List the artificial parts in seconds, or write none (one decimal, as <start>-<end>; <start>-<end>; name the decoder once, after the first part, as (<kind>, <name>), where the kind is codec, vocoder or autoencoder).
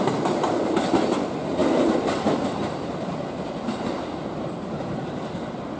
none